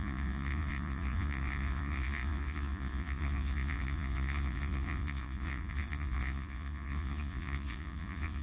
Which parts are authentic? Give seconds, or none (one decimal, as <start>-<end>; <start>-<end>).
none